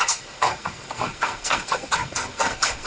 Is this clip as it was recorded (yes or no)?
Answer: no